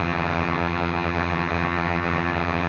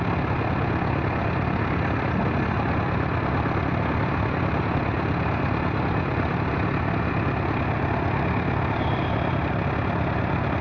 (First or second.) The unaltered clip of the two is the second